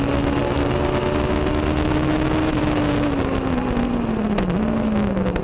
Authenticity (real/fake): real